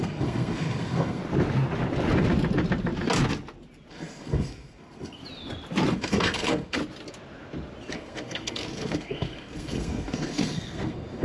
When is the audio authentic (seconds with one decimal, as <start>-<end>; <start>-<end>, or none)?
1.2-3.9; 5.2-5.9; 6.8-7.9